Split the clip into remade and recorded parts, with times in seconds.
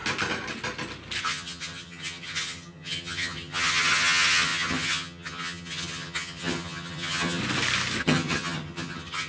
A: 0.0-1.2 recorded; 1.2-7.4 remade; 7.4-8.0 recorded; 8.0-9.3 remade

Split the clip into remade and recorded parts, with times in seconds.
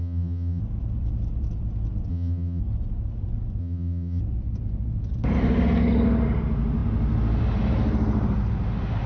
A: 0.0-0.6 remade; 0.6-2.1 recorded; 2.1-2.6 remade; 2.6-3.6 recorded; 3.6-4.2 remade; 4.2-9.1 recorded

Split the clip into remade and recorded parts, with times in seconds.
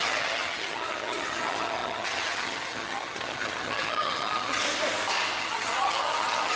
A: 0.0-4.6 remade; 4.6-5.4 recorded; 5.4-6.6 remade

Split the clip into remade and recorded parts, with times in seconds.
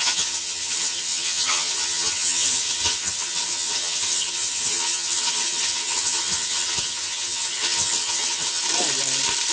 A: 0.0-8.6 remade; 8.6-9.5 recorded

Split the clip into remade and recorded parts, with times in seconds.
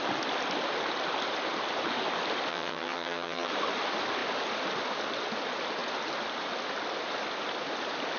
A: 0.0-2.5 recorded; 2.5-3.5 remade; 3.5-8.2 recorded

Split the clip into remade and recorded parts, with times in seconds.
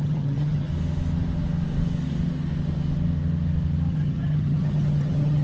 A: 0.0-0.7 remade; 0.7-3.9 recorded; 3.9-5.4 remade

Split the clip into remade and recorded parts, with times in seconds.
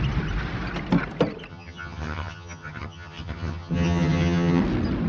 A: 0.0-1.5 recorded; 1.5-4.6 remade; 4.6-5.1 recorded